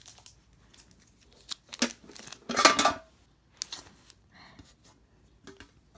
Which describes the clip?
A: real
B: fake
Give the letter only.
A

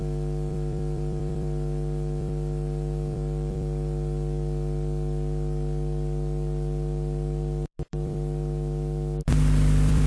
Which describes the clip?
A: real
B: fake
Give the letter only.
B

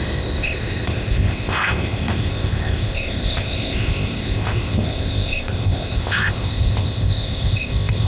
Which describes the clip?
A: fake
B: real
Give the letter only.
A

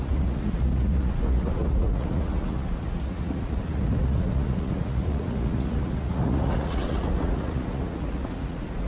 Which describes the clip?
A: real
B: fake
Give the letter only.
B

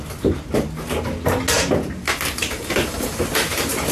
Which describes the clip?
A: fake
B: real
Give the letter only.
B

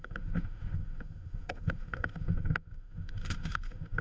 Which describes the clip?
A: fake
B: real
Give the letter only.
A